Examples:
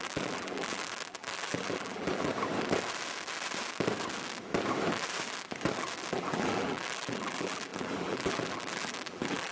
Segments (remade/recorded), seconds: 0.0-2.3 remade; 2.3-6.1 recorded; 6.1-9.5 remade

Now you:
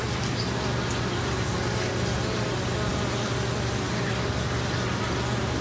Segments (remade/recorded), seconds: 0.0-5.6 recorded